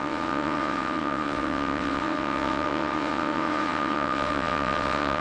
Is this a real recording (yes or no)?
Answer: no